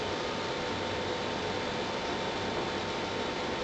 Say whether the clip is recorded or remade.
recorded